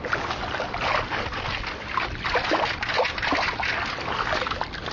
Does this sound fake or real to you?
real